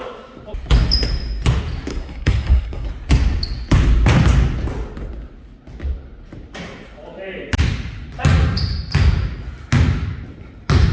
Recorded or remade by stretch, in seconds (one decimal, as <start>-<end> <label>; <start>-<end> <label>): 0.0-1.9 recorded; 1.9-2.9 remade; 2.9-10.9 recorded